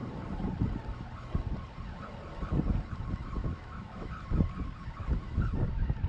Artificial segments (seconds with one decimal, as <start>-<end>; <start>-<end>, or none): 3.4-4.1